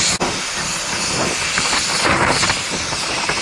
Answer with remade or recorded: recorded